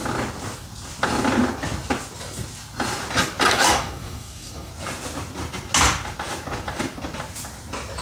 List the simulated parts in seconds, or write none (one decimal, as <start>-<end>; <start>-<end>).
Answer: 3.5-4.7